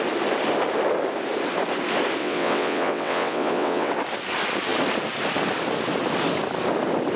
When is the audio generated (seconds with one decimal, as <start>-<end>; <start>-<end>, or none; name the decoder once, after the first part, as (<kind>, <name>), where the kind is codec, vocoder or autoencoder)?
2.2-3.9 (vocoder, WaveNeXt)